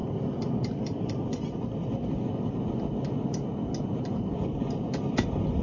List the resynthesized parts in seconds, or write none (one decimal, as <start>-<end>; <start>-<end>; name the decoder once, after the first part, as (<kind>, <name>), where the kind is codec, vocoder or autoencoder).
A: 0.0-1.5 (vocoder, BigVGAN v2)